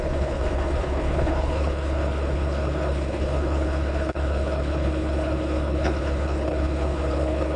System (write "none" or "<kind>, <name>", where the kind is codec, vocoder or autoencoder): codec, HILCodec